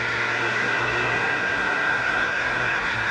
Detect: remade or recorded remade